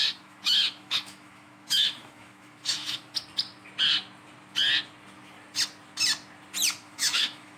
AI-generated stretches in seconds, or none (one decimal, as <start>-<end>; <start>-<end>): 0.0-3.2; 6.8-7.6